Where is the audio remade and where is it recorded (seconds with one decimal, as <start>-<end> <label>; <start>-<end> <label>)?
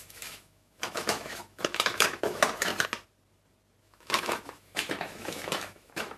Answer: 0.0-2.7 remade; 2.7-3.8 recorded; 3.8-6.2 remade